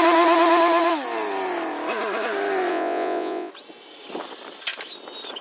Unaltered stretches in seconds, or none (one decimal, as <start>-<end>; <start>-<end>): 0.0-2.7; 3.5-5.4

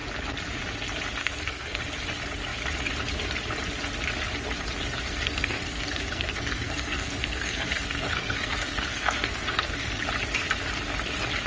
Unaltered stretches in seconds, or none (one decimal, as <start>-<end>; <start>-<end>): 0.0-1.2; 1.8-4.9; 10.0-11.5

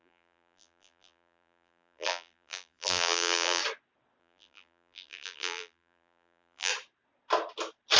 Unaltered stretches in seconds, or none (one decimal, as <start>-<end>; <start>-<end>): 3.6-4.2; 6.7-8.0

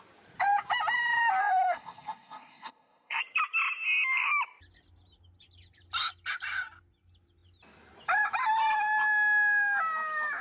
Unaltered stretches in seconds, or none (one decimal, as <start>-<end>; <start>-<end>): 0.0-1.4; 3.2-10.4

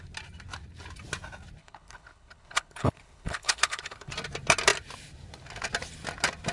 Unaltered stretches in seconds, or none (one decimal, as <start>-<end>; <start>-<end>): 0.0-1.6; 4.1-6.5

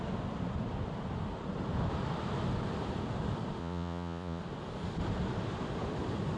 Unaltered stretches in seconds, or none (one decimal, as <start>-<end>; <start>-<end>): 0.0-3.6; 4.4-6.4

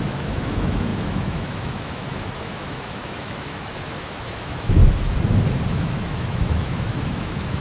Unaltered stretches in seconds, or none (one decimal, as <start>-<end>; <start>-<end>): 4.8-5.7